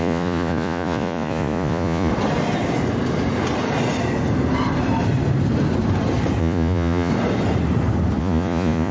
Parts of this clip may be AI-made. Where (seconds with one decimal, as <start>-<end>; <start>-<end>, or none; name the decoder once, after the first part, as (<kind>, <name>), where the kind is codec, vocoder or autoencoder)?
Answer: 0.0-2.1 (vocoder, Vocos); 6.4-7.1; 8.2-8.9